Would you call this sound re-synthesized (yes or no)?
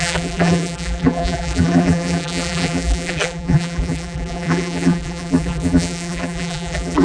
yes